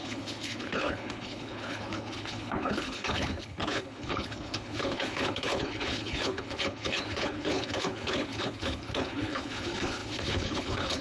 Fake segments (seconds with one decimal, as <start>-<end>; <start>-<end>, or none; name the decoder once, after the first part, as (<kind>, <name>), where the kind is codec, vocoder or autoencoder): 0.0-11.0 (codec, HILCodec)